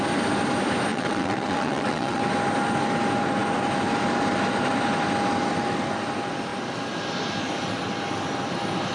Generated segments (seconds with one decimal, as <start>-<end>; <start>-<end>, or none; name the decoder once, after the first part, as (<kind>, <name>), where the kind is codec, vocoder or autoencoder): 0.9-2.2 (vocoder, WaveNeXt)